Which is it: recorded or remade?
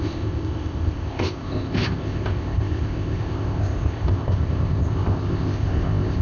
remade